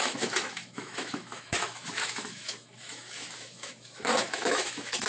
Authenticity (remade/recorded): remade